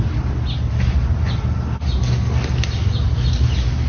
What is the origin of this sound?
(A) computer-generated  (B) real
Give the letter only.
B